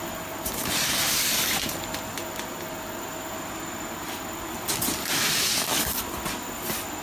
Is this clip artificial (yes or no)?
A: no